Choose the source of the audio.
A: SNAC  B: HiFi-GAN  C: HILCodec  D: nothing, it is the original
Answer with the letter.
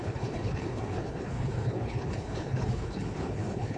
C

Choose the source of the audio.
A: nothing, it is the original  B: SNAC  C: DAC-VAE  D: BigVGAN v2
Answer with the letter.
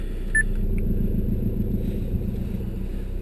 A